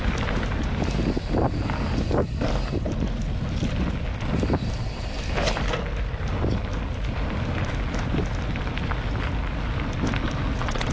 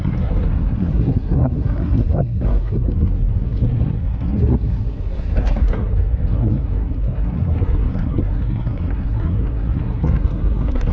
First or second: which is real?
first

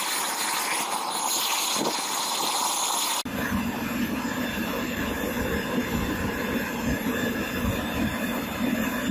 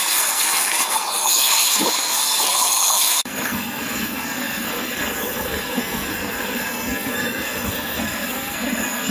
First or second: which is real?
first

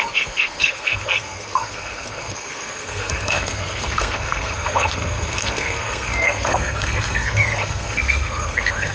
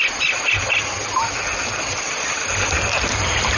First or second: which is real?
second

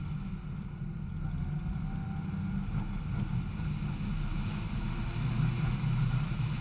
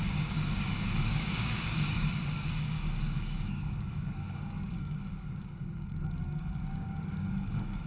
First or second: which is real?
first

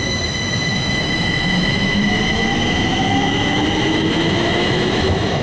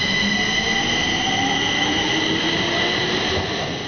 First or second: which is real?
second